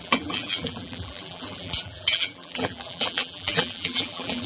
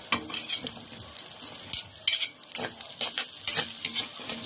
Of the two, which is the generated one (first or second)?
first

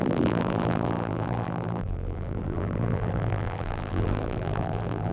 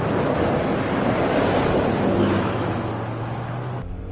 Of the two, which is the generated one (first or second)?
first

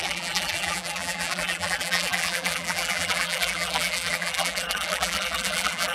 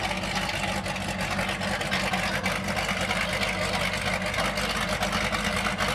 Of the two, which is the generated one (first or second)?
first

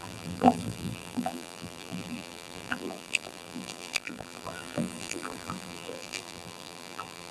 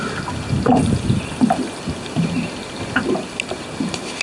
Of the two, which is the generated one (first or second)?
first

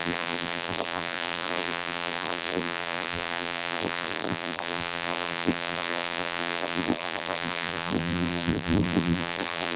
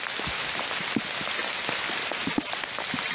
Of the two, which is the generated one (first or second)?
first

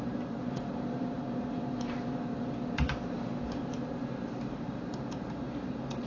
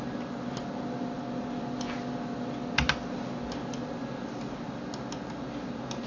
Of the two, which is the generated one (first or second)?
first